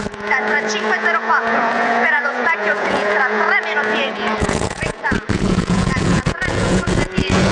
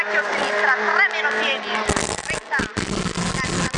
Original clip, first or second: second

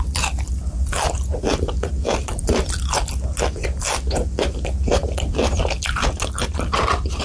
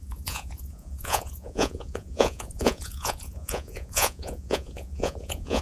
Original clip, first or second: first